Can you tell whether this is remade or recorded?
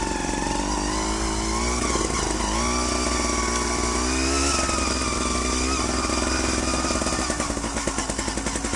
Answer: recorded